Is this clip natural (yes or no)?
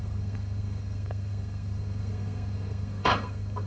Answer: no